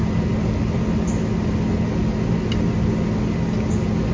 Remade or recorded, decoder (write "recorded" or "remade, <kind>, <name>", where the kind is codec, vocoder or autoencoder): recorded